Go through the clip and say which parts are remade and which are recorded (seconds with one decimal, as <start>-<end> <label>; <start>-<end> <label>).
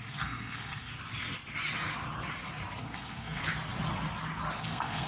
0.0-0.9 remade; 0.9-2.8 recorded; 2.8-3.4 remade; 3.4-4.6 recorded; 4.6-5.1 remade